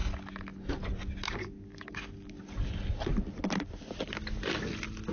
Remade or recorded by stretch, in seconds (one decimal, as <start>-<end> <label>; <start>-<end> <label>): 0.0-1.4 recorded; 1.4-2.4 remade; 2.4-5.1 recorded